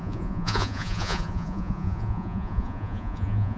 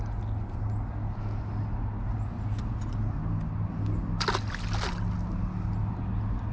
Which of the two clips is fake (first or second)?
first